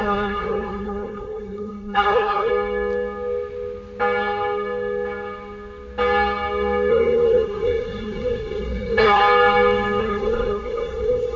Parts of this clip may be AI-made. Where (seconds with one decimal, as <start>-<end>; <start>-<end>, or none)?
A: 0.0-2.5; 6.9-9.2; 10.0-11.4